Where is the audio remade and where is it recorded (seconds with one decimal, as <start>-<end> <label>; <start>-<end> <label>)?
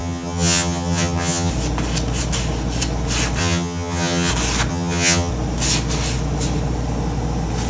0.0-1.5 remade; 1.5-3.4 recorded; 3.4-4.3 remade; 4.3-4.7 recorded; 4.7-5.3 remade; 5.3-7.7 recorded